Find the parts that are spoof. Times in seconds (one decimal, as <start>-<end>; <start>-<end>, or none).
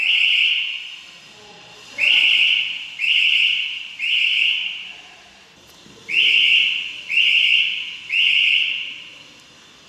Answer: 0.0-4.9